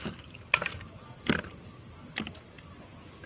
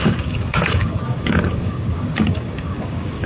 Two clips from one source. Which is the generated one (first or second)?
second